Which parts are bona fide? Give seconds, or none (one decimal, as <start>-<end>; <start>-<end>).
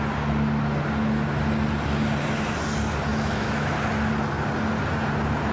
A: 0.0-3.1; 3.7-5.5